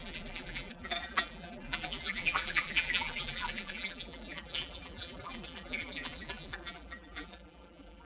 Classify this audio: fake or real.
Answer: fake